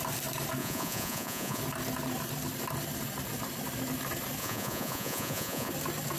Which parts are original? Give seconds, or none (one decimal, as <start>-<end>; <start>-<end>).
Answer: 0.0-0.6; 1.6-4.4; 5.7-6.2